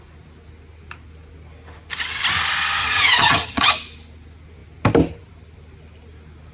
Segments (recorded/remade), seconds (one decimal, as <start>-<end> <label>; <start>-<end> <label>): 0.0-2.8 recorded; 2.8-3.7 remade; 3.7-6.5 recorded